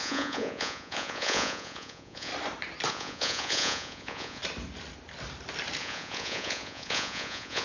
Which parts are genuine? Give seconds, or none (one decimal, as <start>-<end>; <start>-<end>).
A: 2.3-2.9; 4.4-5.8